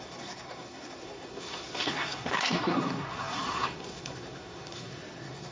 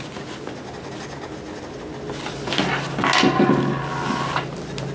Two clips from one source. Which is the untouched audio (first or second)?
second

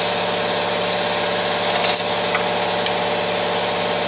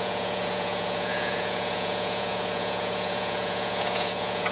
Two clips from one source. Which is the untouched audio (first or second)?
first